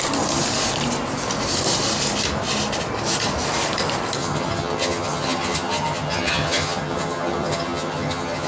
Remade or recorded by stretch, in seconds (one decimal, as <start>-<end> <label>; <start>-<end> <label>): 0.0-4.2 recorded; 4.2-8.5 remade